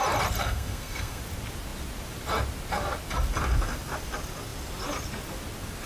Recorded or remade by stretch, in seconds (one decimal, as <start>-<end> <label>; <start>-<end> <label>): 0.0-0.4 recorded; 0.4-1.2 remade; 1.2-5.9 recorded

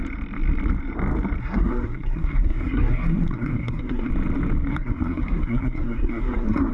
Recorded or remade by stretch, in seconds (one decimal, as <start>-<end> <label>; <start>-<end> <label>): 0.0-1.4 recorded; 1.4-4.1 remade; 4.1-4.7 recorded; 4.7-6.7 remade

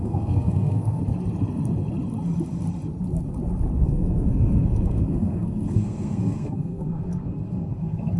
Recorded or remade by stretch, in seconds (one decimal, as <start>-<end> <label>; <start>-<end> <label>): 0.0-1.0 remade; 1.0-3.8 recorded; 3.8-8.2 remade